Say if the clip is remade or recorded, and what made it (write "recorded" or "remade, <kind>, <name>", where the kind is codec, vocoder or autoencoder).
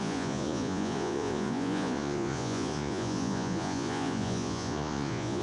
remade, vocoder, Vocos